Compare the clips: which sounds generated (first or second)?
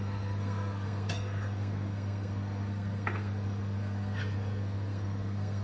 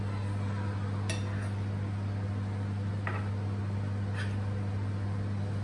first